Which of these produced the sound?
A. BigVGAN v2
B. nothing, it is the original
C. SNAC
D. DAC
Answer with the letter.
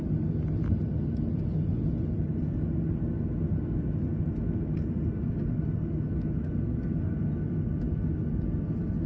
B